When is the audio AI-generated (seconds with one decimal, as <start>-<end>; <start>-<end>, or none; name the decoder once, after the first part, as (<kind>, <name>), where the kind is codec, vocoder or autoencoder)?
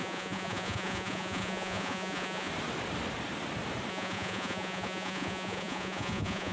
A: 0.0-2.5 (vocoder, Vocos); 3.9-6.5